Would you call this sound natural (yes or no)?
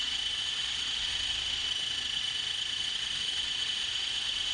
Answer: no